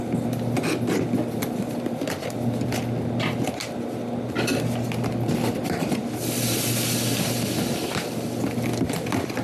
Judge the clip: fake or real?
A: real